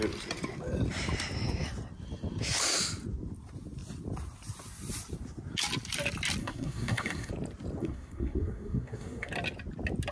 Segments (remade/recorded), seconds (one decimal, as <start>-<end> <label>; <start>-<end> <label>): 0.0-6.4 recorded; 6.4-7.3 remade; 7.3-7.8 recorded; 7.8-9.3 remade; 9.3-10.1 recorded